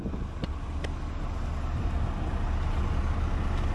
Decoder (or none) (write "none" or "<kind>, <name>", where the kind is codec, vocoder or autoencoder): none